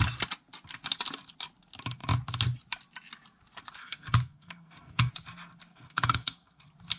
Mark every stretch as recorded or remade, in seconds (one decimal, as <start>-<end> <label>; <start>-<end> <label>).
0.0-3.8 recorded; 3.8-5.1 remade; 5.1-5.7 recorded; 5.7-6.6 remade; 6.6-7.0 recorded